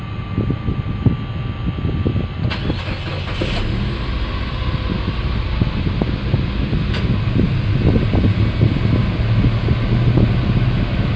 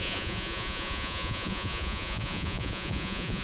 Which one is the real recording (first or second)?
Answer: first